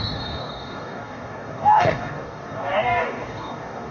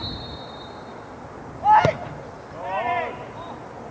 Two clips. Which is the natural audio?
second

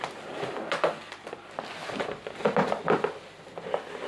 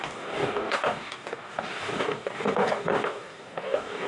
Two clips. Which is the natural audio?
first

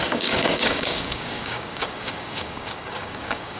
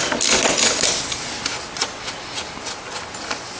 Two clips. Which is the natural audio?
second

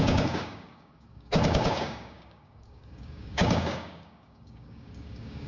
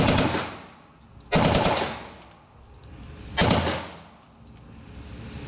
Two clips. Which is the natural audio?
second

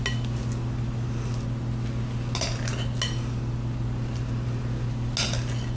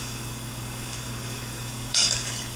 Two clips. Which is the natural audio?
first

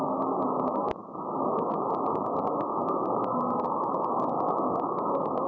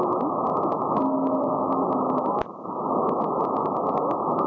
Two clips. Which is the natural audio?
second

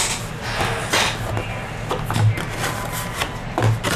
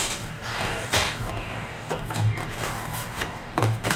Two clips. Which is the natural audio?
first